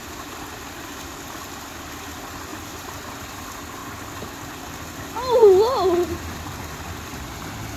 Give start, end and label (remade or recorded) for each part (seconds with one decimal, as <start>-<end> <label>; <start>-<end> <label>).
0.0-2.5 recorded; 2.5-3.3 remade; 3.3-7.8 recorded